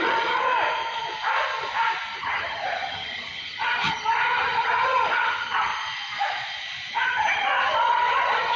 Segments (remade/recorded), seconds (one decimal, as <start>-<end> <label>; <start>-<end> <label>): 0.0-0.5 remade; 0.5-2.2 recorded; 2.2-5.7 remade; 5.7-6.9 recorded; 6.9-8.6 remade